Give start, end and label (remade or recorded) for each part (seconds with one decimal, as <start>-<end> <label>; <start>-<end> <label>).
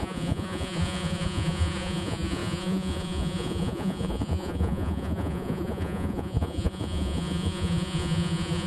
0.0-8.7 remade